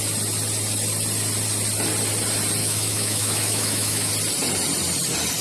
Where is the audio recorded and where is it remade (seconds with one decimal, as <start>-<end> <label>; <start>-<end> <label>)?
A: 0.0-2.6 recorded; 2.6-4.1 remade; 4.1-5.4 recorded